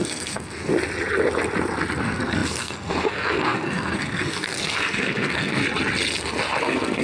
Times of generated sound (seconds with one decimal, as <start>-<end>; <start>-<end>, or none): 0.0-0.7; 2.0-5.6; 6.6-7.0